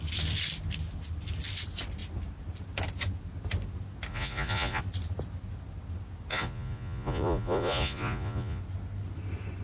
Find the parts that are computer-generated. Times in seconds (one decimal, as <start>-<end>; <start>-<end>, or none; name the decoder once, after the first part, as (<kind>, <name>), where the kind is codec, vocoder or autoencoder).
4.1-4.8 (vocoder, Vocos); 6.3-8.6